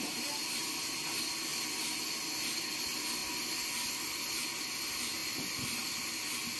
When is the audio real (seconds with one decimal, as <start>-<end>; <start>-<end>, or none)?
0.0-6.6